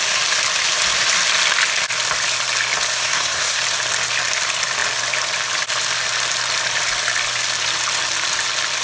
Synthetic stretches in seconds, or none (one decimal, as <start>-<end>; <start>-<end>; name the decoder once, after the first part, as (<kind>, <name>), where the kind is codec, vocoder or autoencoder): 2.9-3.6 (codec, SNAC)